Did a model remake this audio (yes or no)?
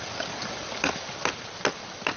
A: no